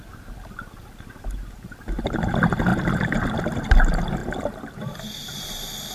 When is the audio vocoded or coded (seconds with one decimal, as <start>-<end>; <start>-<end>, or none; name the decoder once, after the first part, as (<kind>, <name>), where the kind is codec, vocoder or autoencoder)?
2.7-3.4 (vocoder, BigVGAN v2); 4.2-5.5